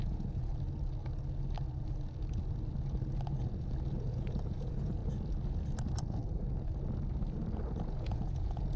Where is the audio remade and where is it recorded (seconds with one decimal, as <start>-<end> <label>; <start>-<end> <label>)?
0.0-0.5 remade; 0.5-4.0 recorded; 4.0-5.0 remade; 5.0-7.9 recorded; 7.9-8.8 remade